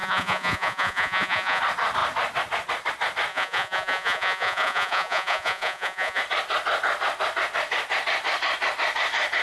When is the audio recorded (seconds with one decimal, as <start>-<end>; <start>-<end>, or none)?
1.6-3.3; 6.2-9.4